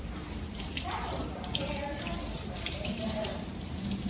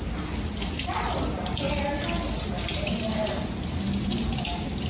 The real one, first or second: second